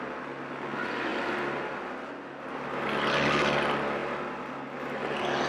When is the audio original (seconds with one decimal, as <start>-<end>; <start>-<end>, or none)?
0.0-5.5